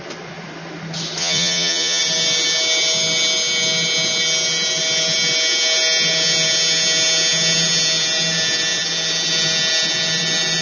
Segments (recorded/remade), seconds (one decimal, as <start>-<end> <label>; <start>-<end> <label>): 0.0-1.2 recorded; 1.2-2.0 remade; 2.0-10.6 recorded